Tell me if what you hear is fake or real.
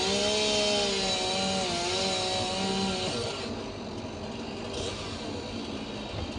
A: real